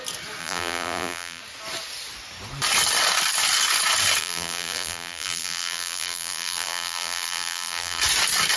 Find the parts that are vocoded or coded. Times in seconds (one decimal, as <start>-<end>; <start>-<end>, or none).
0.4-1.4; 4.2-8.0